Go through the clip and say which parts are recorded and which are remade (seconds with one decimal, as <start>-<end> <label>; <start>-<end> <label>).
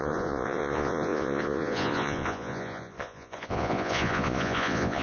0.0-5.0 remade